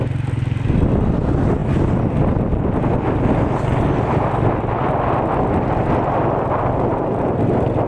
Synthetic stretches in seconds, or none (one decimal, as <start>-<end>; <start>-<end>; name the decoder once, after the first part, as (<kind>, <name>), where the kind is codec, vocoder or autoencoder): none